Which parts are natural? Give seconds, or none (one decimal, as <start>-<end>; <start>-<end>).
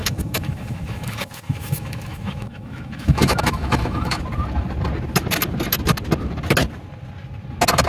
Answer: 4.2-7.9